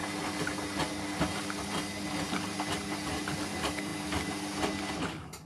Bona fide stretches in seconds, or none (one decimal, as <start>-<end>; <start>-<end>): 0.0-5.5